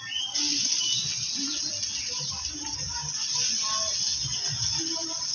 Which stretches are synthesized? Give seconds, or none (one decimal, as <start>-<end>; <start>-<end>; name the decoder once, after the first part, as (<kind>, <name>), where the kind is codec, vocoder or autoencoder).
none